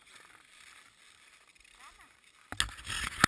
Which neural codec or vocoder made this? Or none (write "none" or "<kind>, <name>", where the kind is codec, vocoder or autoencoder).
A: none